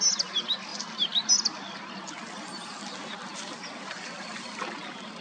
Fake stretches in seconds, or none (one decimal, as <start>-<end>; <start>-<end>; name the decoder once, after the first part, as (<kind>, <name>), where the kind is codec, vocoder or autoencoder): none